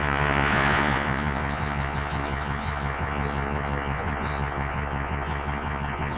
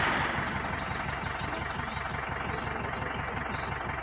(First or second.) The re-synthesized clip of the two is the first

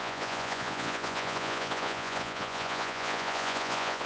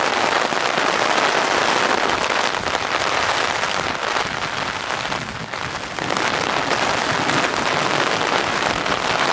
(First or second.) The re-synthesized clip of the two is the first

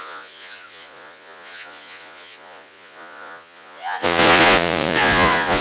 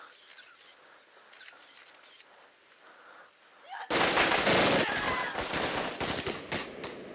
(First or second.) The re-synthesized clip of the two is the first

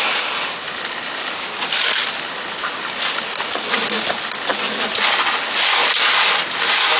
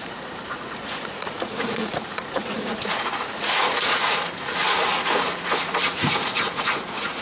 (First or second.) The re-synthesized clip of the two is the second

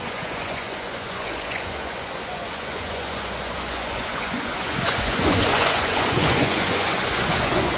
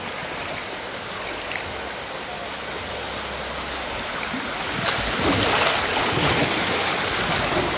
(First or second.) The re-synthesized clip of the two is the first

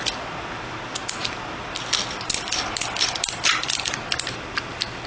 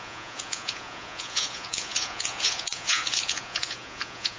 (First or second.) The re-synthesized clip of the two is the second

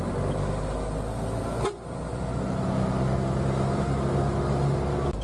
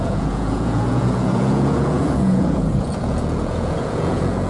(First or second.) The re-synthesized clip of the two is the second